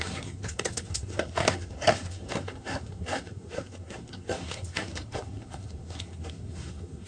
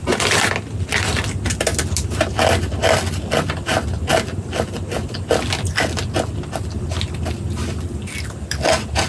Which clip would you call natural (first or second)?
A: second